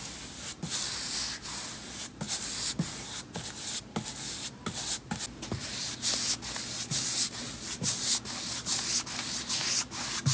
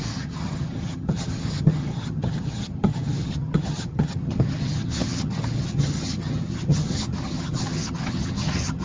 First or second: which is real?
first